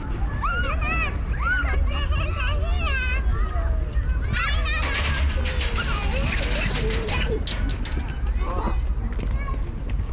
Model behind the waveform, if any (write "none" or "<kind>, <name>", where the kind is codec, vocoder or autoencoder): none